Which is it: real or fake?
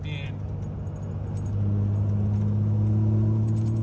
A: real